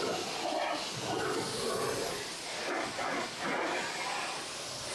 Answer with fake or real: real